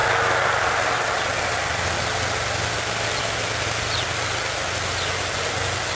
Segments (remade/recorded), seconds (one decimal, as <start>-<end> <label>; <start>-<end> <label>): 0.0-5.9 recorded